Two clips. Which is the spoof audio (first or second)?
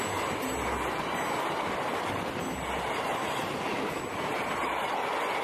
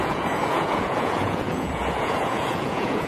second